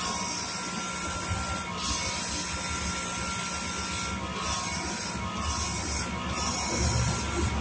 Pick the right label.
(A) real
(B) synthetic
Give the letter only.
A